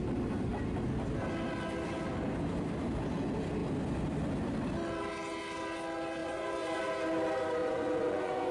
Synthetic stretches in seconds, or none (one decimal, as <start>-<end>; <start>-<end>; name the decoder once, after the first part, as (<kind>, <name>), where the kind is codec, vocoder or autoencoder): 6.2-6.8 (vocoder, Vocos); 7.6-8.5

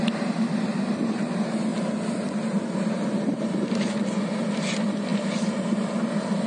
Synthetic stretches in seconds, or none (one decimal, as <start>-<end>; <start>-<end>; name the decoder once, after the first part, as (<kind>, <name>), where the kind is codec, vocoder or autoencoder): none